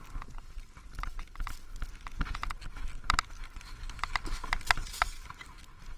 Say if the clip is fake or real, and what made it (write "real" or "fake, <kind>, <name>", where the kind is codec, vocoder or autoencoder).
real